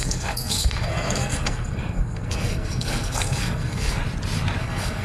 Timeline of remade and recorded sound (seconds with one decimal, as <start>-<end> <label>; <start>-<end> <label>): 0.0-4.0 remade; 4.0-4.6 recorded; 4.6-5.0 remade